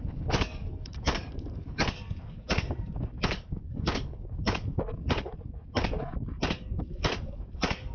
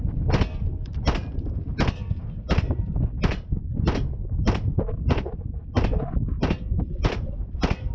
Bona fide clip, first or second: second